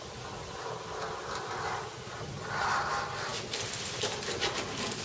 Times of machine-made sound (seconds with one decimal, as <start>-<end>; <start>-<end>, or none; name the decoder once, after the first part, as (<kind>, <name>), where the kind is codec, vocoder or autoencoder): none